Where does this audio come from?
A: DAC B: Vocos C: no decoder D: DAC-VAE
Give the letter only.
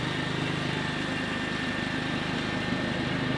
C